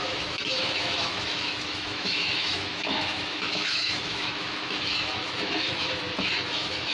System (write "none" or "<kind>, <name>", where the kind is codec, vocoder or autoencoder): autoencoder, DAC-VAE